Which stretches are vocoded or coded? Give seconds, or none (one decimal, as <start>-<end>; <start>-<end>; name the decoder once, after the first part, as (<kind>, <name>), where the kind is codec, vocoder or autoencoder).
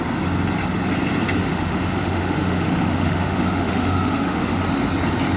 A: 1.4-4.6 (autoencoder, DAC-VAE)